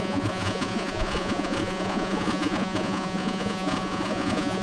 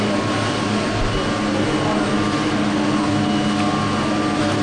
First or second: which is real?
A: second